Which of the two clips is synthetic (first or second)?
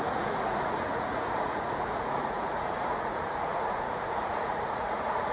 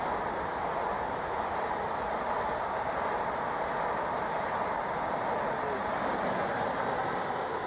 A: first